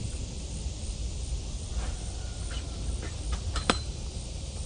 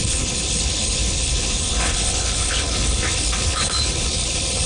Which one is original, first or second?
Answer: first